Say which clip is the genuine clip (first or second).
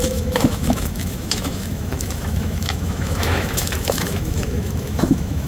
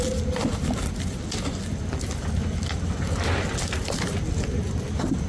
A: second